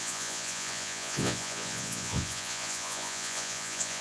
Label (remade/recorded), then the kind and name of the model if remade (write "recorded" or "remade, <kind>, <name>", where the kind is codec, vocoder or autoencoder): remade, vocoder, Vocos